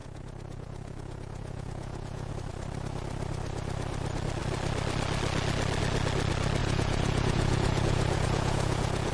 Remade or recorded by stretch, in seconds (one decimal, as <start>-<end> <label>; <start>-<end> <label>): 0.0-2.3 remade; 2.3-6.6 recorded; 6.6-9.1 remade

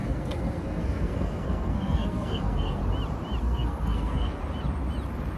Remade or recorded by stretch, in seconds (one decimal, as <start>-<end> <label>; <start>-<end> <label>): 0.0-2.8 remade; 2.8-3.4 recorded; 3.4-4.4 remade; 4.4-5.4 recorded

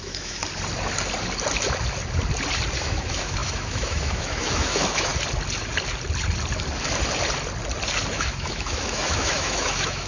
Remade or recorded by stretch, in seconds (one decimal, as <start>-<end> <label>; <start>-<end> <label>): 0.0-0.4 remade; 0.4-2.8 recorded; 2.8-5.1 remade; 5.1-8.1 recorded; 8.1-10.1 remade

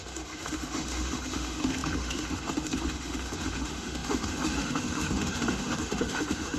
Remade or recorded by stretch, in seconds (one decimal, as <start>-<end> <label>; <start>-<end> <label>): 0.0-6.6 remade

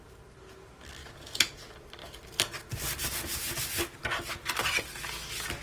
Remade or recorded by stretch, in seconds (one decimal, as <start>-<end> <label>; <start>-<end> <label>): 0.0-1.0 recorded; 1.0-1.6 remade; 1.6-5.6 recorded